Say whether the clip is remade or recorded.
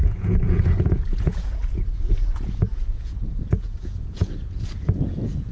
remade